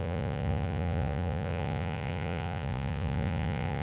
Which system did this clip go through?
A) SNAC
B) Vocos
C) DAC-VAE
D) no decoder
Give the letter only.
B